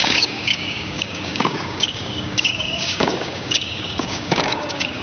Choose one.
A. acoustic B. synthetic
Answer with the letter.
B